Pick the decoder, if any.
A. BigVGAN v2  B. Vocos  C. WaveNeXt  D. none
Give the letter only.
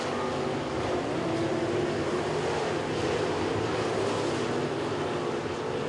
D